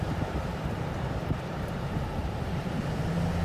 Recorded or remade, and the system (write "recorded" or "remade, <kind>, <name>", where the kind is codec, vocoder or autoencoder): remade, vocoder, BigVGAN v2